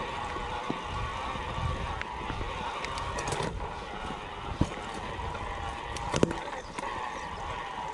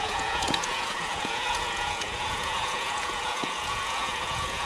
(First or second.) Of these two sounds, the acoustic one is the first